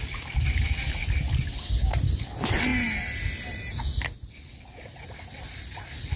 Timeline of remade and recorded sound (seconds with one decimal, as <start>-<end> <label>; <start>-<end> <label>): 0.0-6.2 recorded